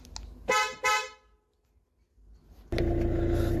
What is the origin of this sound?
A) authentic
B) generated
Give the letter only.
A